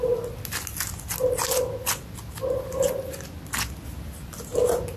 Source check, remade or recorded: recorded